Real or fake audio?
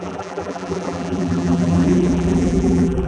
fake